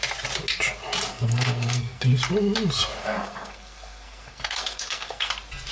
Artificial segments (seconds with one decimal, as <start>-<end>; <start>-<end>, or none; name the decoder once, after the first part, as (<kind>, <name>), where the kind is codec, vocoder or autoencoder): 1.1-2.0 (codec, SNAC); 3.0-5.3